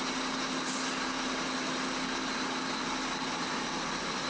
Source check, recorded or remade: recorded